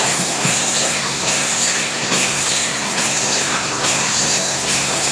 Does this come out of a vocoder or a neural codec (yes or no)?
yes